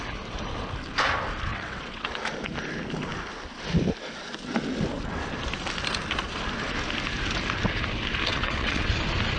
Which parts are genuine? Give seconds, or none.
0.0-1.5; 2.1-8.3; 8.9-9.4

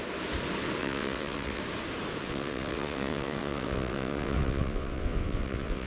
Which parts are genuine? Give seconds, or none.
0.0-0.8; 1.6-2.2

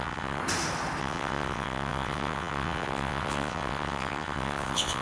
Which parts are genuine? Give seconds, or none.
0.4-1.0